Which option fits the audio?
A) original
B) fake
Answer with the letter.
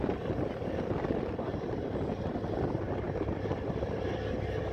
A